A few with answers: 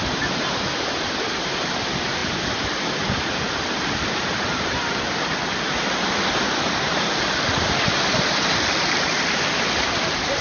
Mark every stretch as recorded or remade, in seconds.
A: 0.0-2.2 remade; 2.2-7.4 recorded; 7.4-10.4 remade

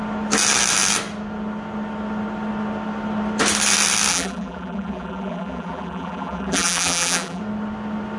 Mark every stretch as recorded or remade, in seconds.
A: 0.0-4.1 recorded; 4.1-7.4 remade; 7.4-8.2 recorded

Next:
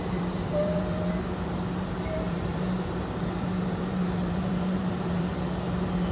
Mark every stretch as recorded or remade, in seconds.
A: 0.0-5.3 remade; 5.3-6.1 recorded

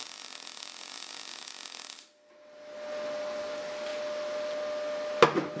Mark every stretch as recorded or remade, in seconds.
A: 0.0-3.4 recorded; 3.4-3.9 remade; 3.9-5.6 recorded

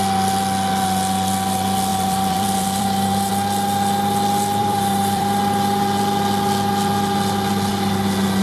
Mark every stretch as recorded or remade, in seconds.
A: 0.0-1.9 recorded; 1.9-3.3 remade; 3.3-4.6 recorded; 4.6-5.4 remade; 5.4-8.4 recorded

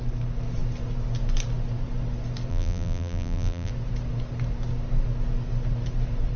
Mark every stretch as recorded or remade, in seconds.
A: 0.0-2.5 recorded; 2.5-3.7 remade; 3.7-6.4 recorded

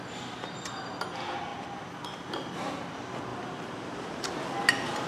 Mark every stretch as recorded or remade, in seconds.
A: 0.0-3.3 recorded; 3.3-4.5 remade; 4.5-5.1 recorded

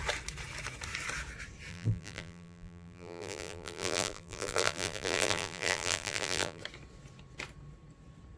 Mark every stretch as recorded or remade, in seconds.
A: 0.0-1.7 recorded; 1.7-6.6 remade; 6.6-8.4 recorded